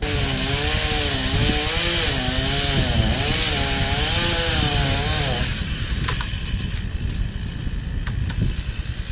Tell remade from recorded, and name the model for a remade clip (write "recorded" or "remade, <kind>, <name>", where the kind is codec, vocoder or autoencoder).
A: recorded